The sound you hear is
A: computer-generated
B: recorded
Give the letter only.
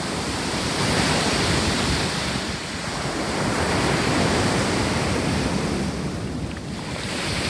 B